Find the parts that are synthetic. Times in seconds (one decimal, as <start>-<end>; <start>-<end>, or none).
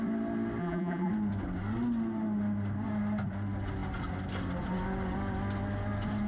0.6-1.1